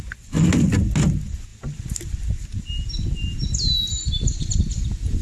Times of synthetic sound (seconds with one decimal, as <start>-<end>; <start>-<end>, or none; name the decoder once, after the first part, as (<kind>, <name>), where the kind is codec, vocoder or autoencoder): none